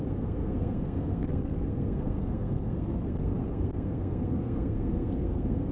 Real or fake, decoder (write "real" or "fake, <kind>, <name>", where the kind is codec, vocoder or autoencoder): fake, codec, SNAC